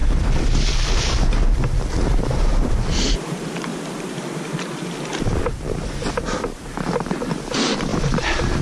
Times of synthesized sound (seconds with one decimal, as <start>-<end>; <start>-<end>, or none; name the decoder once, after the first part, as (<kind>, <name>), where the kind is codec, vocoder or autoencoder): 2.1-3.7 (vocoder, BigVGAN v2); 5.4-8.6